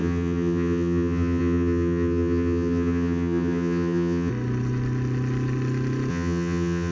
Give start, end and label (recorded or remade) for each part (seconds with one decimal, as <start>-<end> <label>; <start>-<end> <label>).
0.0-4.3 remade; 4.3-6.1 recorded; 6.1-6.9 remade